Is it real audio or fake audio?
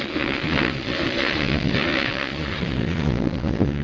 fake